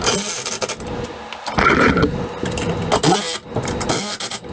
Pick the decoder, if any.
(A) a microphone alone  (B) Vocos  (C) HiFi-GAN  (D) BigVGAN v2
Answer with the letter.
A